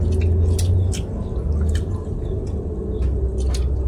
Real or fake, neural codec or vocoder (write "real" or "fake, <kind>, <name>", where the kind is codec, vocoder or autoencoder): real